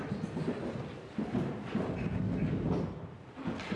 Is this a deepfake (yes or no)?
no